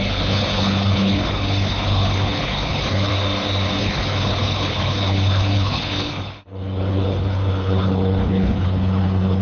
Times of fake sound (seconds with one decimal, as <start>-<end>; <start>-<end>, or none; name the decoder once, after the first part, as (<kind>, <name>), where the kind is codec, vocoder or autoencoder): 0.0-3.1 (codec, HILCodec); 3.8-9.4